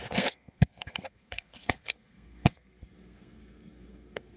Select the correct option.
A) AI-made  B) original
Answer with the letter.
A